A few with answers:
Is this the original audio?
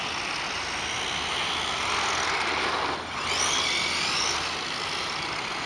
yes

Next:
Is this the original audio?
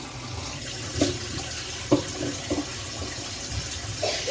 yes